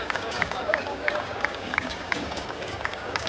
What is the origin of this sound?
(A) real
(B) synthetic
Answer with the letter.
B